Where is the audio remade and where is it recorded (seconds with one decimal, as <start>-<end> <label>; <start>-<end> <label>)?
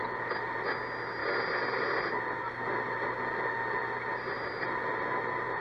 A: 0.0-5.6 recorded